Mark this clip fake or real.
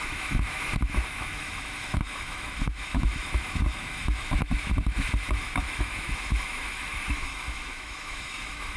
fake